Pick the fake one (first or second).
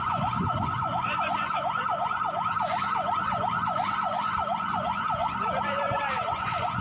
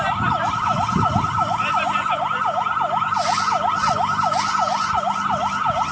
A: first